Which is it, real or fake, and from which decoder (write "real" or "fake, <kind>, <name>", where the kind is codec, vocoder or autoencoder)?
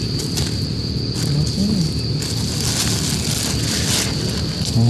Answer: real